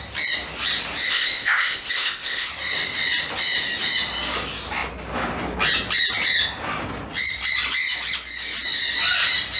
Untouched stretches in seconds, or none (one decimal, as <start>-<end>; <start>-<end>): 0.0-1.0; 2.5-9.6